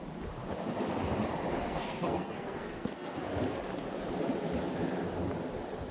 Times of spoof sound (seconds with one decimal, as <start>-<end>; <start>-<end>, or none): 1.5-3.2